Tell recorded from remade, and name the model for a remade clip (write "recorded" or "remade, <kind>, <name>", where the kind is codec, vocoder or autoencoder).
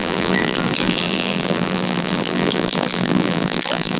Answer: remade, vocoder, BigVGAN v2